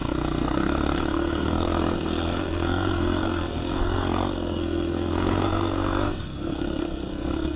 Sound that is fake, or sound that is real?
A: fake